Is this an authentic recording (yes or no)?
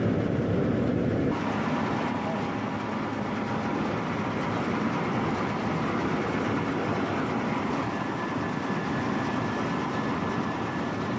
yes